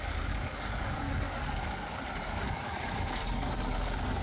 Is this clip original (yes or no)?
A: no